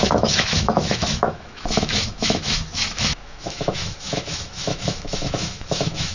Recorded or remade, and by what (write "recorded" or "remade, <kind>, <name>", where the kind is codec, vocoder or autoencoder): remade, autoencoder, DAC-VAE